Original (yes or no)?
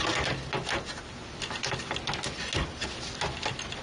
yes